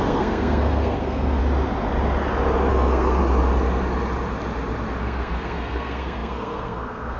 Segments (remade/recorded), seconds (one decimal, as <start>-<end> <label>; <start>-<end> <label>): 0.0-1.4 remade; 1.4-2.7 recorded; 2.7-3.2 remade; 3.2-5.0 recorded; 5.0-7.2 remade